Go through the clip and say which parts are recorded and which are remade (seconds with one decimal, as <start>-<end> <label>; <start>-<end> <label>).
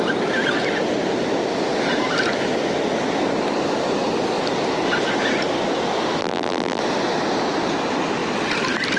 0.0-6.2 recorded; 6.2-6.8 remade; 6.8-9.0 recorded